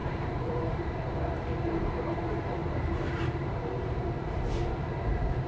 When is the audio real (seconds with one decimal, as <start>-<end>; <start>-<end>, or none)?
2.0-2.6; 4.5-5.5

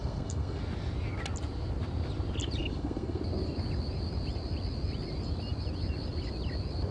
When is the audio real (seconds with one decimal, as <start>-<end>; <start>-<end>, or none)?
0.6-2.6; 3.2-6.9

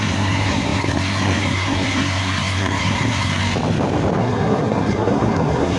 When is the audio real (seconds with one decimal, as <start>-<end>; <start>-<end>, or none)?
3.4-4.2

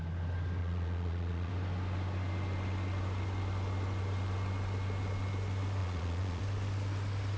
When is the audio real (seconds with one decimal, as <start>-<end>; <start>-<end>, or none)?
0.0-0.6; 1.5-5.8; 6.4-7.4

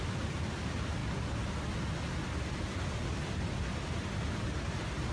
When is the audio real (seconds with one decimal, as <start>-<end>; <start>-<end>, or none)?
0.0-5.1

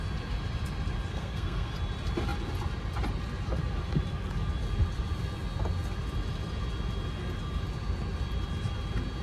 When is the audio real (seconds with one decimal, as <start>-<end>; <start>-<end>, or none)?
0.0-1.1; 1.7-9.2